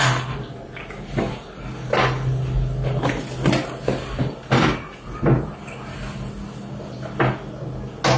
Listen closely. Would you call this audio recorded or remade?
recorded